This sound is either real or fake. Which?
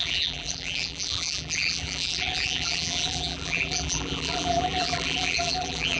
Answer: fake